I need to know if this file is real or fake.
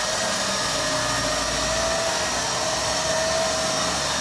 real